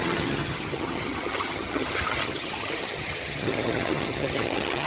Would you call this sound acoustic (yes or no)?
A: no